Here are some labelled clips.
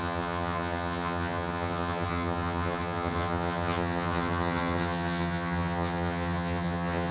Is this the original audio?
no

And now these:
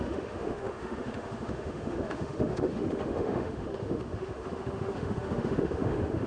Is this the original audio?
no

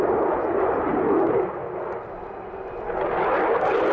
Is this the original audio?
yes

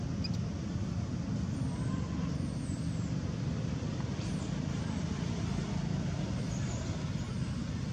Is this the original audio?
yes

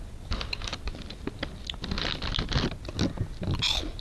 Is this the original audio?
yes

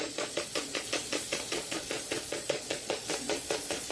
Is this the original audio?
no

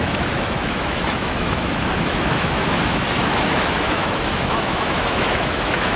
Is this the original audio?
no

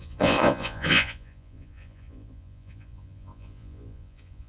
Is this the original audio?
no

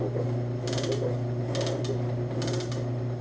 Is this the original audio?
yes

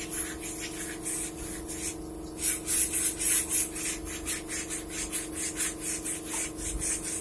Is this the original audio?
yes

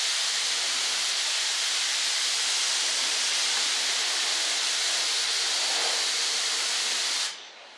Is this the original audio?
yes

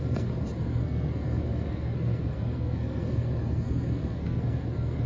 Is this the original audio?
no